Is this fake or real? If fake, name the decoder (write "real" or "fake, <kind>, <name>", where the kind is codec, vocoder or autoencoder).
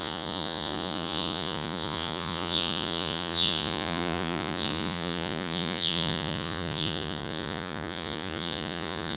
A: fake, vocoder, Vocos